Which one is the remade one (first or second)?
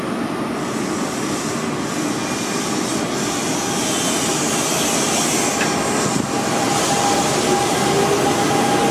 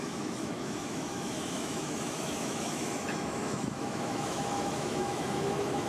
second